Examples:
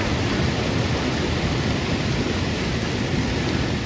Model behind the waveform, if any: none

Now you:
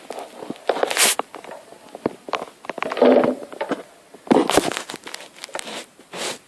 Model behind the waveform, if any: none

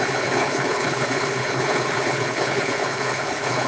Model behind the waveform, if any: codec, HILCodec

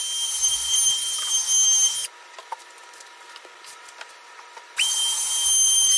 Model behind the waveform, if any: none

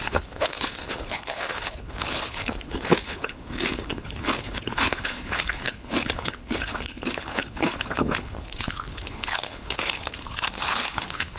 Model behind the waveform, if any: codec, HILCodec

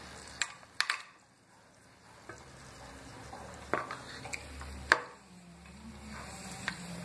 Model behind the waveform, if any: none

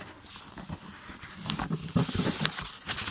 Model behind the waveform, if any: none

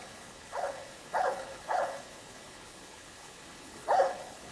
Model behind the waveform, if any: codec, HILCodec